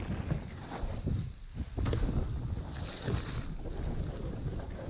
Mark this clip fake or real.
real